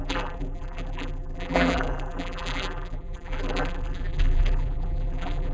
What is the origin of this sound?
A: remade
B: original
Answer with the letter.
A